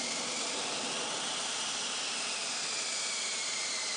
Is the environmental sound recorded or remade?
recorded